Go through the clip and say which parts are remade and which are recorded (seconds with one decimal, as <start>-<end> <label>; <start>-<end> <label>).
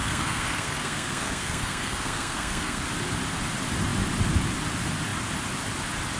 0.0-2.8 remade; 2.8-6.2 recorded